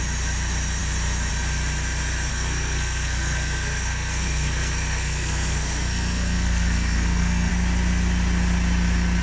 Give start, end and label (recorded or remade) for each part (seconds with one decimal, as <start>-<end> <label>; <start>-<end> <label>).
0.0-2.3 recorded; 2.3-7.5 remade; 7.5-9.2 recorded